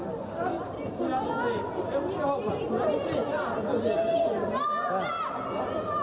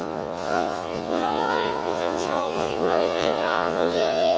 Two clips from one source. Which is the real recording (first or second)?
first